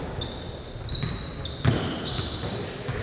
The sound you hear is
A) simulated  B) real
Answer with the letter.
B